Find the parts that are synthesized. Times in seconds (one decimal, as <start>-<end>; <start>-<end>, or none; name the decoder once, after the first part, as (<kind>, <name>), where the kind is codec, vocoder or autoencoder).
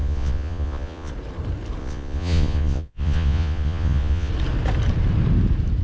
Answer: 0.0-1.1 (vocoder, Vocos); 1.8-4.3